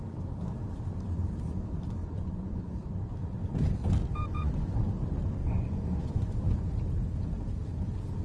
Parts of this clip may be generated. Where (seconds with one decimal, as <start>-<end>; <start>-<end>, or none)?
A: 2.0-2.7; 4.2-4.8; 5.4-6.7